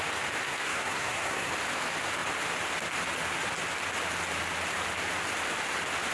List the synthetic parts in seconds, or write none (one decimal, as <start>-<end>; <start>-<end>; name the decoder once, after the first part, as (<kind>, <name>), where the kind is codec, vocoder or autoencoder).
0.4-1.5 (codec, SNAC)